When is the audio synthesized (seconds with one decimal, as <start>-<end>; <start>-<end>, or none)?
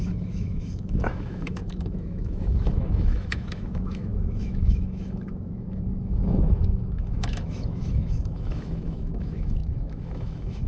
0.0-10.7